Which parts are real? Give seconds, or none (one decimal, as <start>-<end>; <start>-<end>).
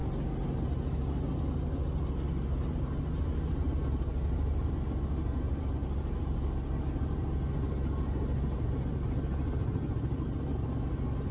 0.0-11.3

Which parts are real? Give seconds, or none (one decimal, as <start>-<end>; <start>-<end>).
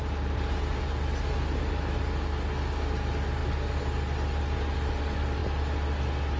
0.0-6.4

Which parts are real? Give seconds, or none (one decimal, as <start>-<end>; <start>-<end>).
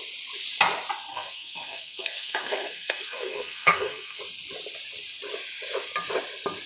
0.0-1.1; 4.2-6.7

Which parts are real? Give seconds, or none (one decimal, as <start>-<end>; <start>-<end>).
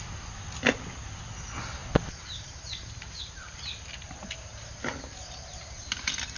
0.0-1.8; 3.2-6.4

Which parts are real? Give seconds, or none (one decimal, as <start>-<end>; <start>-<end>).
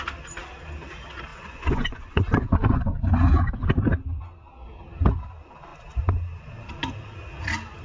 0.0-1.3; 3.0-7.8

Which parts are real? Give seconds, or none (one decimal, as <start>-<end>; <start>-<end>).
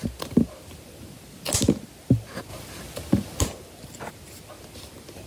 0.0-5.3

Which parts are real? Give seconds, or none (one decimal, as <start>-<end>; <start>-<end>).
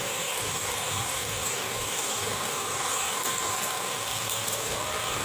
none